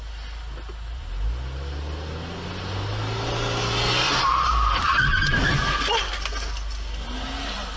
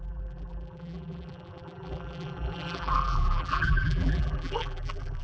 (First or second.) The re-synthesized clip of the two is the second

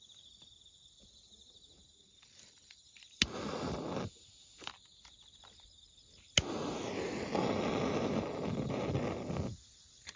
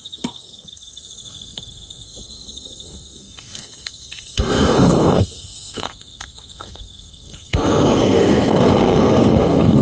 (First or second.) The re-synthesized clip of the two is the second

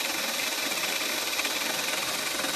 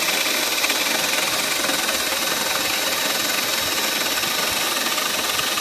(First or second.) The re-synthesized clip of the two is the first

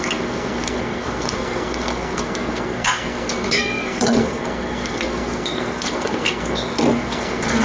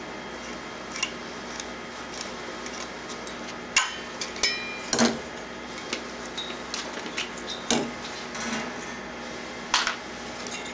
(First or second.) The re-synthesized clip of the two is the first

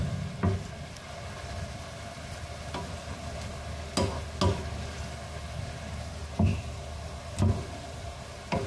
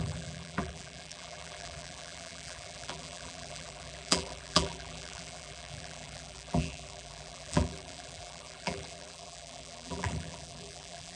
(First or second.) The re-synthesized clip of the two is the second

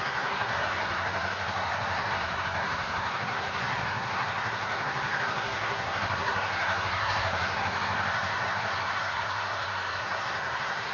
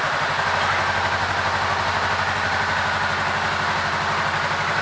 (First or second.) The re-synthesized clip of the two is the first